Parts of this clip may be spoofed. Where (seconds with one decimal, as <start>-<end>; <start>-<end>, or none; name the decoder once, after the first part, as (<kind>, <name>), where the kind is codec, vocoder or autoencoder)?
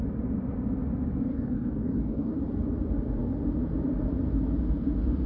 1.3-2.4 (codec, DAC)